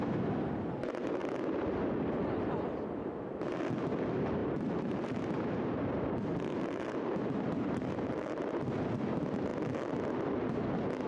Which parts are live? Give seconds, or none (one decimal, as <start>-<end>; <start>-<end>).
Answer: 0.0-4.4; 8.7-11.1